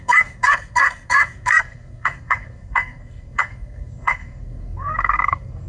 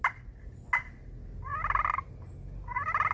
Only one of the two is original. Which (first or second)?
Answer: second